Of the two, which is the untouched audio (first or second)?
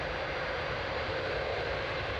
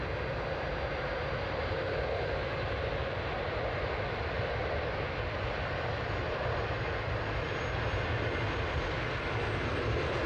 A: second